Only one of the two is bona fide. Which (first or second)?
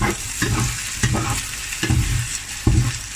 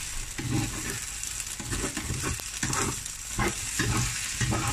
second